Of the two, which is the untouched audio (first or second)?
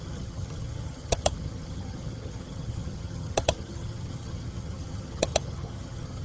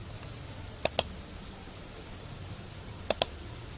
second